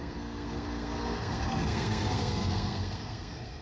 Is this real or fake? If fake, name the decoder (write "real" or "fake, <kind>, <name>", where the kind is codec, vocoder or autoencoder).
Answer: fake, codec, SNAC